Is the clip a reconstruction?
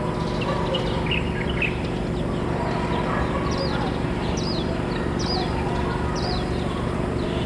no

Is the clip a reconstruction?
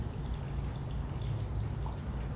no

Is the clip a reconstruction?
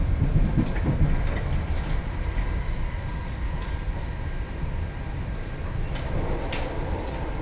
no